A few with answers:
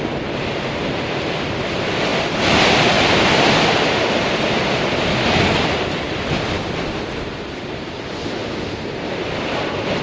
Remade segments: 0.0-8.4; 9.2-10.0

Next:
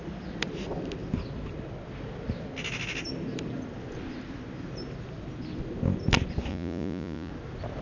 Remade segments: 6.5-7.3

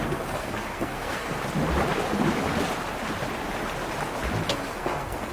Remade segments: 0.0-1.4; 4.5-5.3

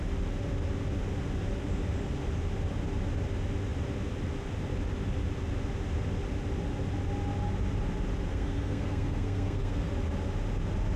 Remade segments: 8.3-9.9

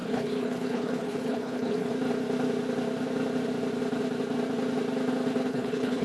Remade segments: 0.0-1.9; 5.5-6.0

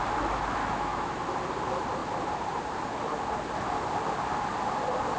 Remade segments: 0.6-1.2